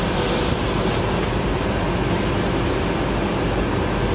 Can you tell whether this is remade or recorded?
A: recorded